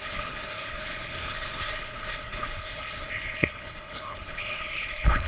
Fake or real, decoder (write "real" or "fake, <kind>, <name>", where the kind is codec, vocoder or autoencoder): fake, codec, HILCodec